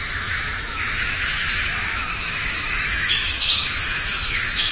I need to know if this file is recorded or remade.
remade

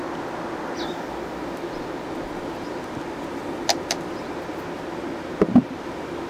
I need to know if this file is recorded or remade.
recorded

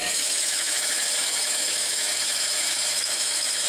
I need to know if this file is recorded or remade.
remade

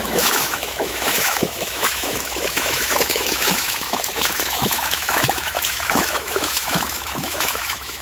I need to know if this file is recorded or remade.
remade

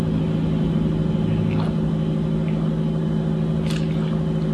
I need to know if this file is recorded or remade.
recorded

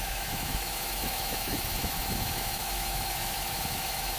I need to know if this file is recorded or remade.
remade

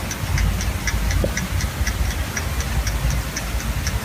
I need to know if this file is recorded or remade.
recorded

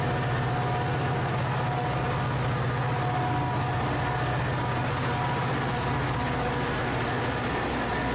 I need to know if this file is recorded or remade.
recorded